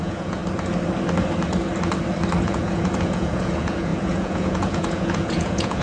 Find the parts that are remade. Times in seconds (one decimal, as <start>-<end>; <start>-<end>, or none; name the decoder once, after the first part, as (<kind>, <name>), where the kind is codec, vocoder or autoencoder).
0.0-0.4 (vocoder, Vocos); 2.4-5.8